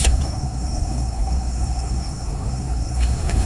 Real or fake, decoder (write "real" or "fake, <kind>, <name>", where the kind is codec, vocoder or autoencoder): fake, codec, SNAC